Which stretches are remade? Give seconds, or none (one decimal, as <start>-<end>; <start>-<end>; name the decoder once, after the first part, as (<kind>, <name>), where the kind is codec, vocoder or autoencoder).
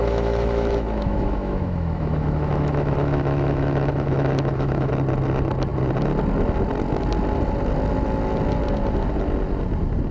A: 0.0-4.9 (autoencoder, DAC-VAE)